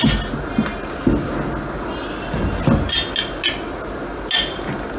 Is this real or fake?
real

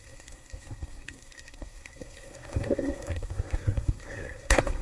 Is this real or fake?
fake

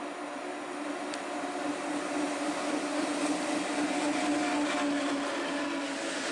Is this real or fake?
real